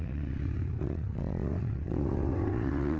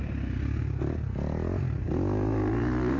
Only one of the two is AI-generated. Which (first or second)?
first